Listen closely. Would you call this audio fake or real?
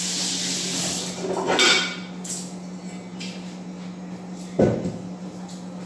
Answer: real